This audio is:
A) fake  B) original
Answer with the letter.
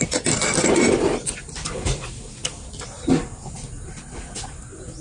B